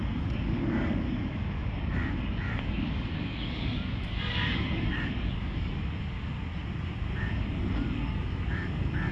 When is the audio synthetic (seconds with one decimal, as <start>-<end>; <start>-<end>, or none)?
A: 0.0-6.5; 7.2-9.1